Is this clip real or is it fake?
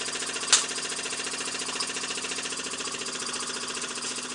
real